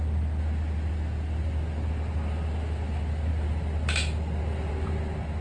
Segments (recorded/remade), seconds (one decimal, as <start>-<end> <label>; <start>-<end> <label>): 0.0-5.4 recorded